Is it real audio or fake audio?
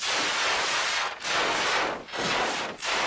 real